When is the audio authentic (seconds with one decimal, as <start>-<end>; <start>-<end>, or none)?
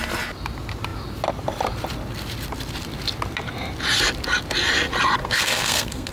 0.0-5.2